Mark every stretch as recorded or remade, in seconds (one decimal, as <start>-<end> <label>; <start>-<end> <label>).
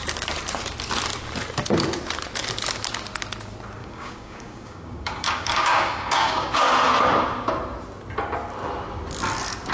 0.0-3.8 recorded; 3.8-6.7 remade; 6.7-9.7 recorded